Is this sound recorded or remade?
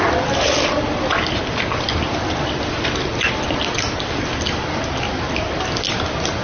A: recorded